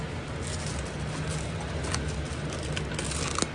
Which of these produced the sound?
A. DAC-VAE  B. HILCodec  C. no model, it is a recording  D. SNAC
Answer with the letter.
C